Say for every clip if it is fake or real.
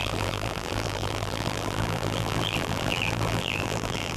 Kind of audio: fake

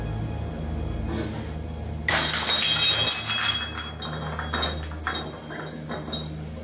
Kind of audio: real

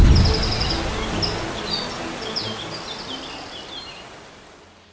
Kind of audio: real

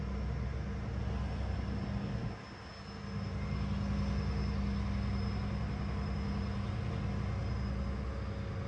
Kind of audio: real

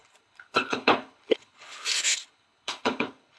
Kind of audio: fake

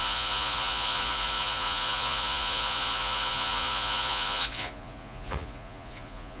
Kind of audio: fake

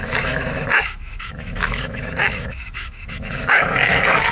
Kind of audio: fake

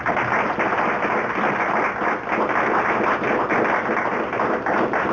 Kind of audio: real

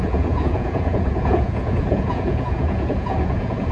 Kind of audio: fake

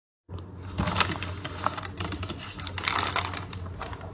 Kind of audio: real